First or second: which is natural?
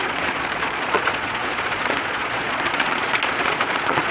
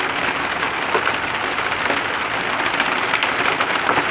second